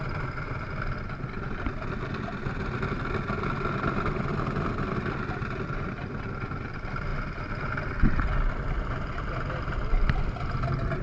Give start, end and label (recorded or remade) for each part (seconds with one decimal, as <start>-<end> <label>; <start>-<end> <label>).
0.0-11.0 recorded